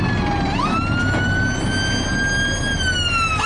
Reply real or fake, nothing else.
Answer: real